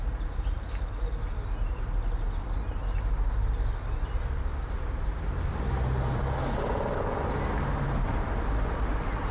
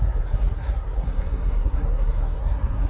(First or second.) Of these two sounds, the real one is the first